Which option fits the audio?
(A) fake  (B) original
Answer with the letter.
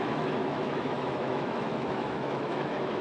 A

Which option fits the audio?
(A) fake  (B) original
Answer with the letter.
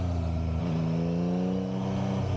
B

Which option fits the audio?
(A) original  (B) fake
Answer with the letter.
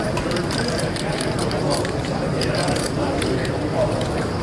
B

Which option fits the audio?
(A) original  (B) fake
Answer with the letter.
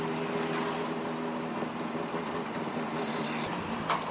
A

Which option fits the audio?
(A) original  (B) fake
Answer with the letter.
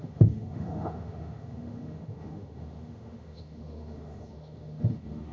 B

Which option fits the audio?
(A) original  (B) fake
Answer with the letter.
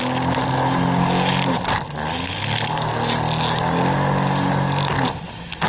A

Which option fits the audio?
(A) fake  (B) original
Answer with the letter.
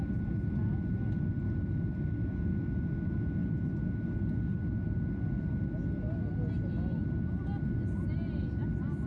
B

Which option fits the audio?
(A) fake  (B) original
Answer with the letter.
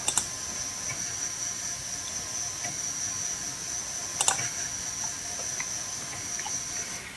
B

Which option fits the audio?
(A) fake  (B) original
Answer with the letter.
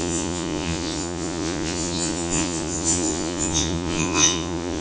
A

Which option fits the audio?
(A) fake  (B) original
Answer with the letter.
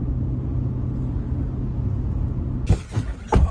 B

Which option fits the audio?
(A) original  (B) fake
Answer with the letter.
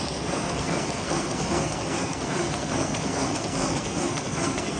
B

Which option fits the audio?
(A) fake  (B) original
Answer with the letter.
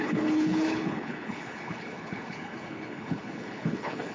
A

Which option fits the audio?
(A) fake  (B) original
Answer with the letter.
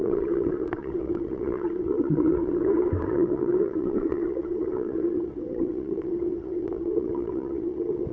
A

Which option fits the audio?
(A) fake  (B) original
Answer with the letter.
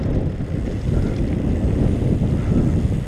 B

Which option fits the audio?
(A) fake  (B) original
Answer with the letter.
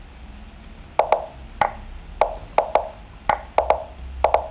B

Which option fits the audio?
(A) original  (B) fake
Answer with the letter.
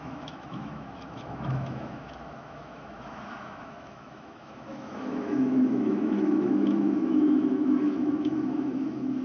B